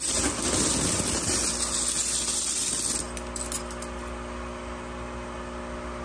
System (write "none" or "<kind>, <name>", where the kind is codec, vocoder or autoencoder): none